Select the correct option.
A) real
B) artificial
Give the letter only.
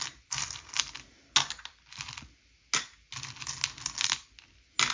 A